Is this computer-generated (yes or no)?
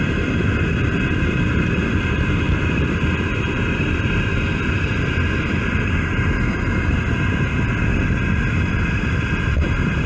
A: yes